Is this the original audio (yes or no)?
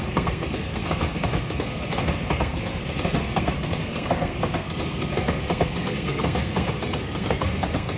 no